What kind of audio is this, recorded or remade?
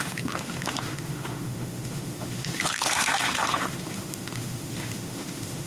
remade